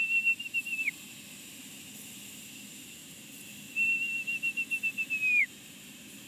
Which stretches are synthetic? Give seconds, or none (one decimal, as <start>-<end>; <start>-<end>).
none